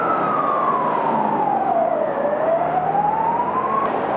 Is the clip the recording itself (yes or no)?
yes